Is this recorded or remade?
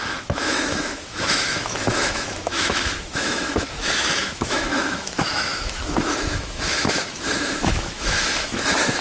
remade